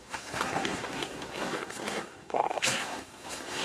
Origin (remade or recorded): remade